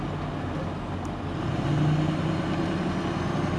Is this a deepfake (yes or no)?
no